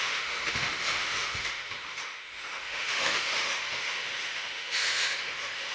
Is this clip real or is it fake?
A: fake